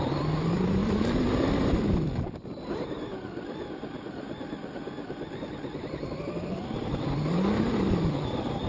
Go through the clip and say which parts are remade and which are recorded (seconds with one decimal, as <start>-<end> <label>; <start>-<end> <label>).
0.0-8.7 remade